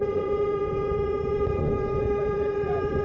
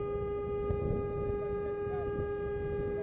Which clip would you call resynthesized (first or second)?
first